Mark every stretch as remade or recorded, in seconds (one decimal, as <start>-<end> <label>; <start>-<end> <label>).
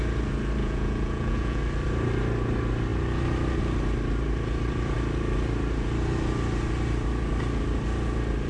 0.0-0.6 recorded; 0.6-1.6 remade; 1.6-8.5 recorded